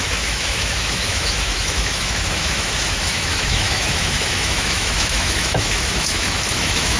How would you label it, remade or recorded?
remade